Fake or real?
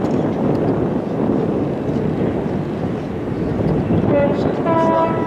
real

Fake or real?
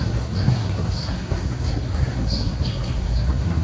fake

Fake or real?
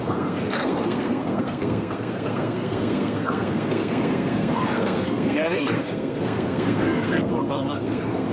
fake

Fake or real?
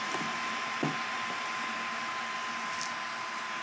real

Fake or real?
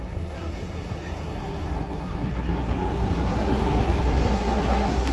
fake